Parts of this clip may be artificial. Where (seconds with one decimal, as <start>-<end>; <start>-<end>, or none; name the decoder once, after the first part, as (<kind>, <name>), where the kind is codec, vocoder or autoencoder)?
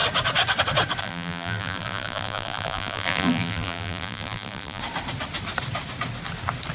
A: 1.0-4.8 (vocoder, BigVGAN v2)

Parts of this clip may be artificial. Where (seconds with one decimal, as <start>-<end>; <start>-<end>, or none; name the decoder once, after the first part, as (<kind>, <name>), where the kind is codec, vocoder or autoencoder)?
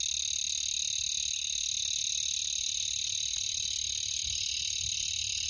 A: none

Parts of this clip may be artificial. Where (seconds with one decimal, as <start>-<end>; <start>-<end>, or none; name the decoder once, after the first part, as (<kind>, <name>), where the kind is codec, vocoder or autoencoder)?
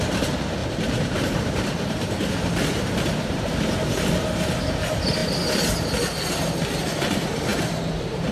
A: 0.6-3.4 (vocoder, BigVGAN v2); 7.5-8.3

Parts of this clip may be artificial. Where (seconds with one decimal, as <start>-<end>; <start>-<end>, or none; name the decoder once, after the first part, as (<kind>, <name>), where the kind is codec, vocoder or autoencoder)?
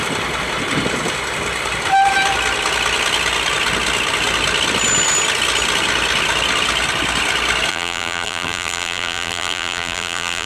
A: 7.7-10.5 (vocoder, BigVGAN v2)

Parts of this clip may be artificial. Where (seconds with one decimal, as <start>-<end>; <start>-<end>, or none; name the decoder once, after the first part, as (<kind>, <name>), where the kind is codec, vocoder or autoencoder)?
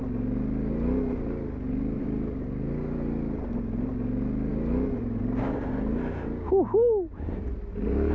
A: none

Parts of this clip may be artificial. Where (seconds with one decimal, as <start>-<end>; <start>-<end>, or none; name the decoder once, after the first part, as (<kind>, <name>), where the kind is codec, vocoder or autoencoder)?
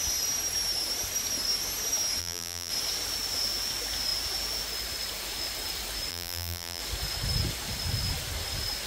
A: 2.2-2.7 (vocoder, BigVGAN v2); 6.1-6.8